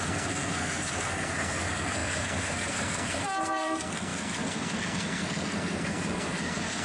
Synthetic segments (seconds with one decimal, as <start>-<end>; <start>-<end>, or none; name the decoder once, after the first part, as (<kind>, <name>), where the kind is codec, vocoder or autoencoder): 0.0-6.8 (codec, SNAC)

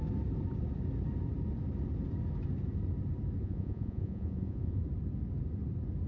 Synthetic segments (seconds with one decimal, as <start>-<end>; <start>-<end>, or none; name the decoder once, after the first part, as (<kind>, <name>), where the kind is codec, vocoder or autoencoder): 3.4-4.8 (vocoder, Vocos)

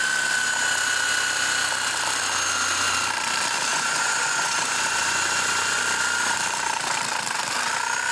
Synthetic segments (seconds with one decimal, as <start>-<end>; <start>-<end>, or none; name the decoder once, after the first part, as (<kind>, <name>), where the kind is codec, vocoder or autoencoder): 3.7-5.8 (vocoder, Vocos)

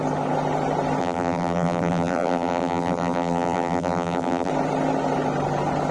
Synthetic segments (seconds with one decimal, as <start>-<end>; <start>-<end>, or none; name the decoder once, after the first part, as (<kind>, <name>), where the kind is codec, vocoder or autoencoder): 1.0-4.5 (vocoder, BigVGAN v2)

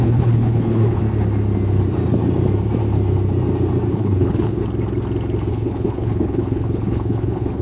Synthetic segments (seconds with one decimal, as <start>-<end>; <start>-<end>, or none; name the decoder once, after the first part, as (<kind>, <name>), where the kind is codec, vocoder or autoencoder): 0.0-1.0 (codec, HILCodec); 3.9-4.6; 5.5-7.6

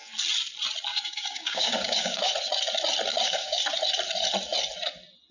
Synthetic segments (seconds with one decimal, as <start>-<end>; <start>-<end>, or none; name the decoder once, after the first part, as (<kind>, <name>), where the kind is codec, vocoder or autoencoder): 0.9-2.3 (codec, DAC); 3.1-3.6